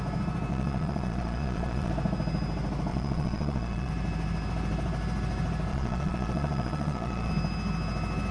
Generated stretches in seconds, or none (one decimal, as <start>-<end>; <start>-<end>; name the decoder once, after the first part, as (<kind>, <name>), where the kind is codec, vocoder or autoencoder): 0.5-1.9 (vocoder, Vocos); 2.9-3.9; 5.7-7.3